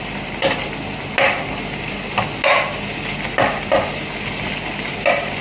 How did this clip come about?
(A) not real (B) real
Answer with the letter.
B